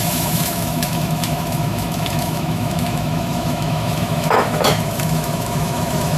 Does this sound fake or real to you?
fake